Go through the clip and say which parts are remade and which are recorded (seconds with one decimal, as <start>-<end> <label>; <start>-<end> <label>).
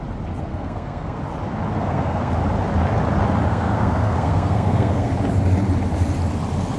0.0-0.5 recorded; 0.5-1.2 remade; 1.2-1.8 recorded; 1.8-2.3 remade; 2.3-3.5 recorded; 3.5-5.1 remade; 5.1-6.8 recorded